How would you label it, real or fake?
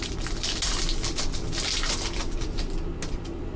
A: real